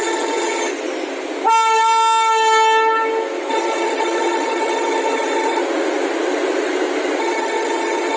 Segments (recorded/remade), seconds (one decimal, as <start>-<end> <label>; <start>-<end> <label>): 0.0-0.7 remade; 0.7-3.5 recorded; 3.5-5.6 remade; 5.6-7.2 recorded; 7.2-8.2 remade